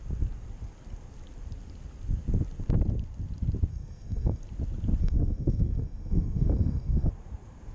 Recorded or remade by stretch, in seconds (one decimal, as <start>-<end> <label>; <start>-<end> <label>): 0.0-3.7 recorded; 3.7-4.4 remade; 4.4-5.0 recorded; 5.0-7.1 remade; 7.1-7.7 recorded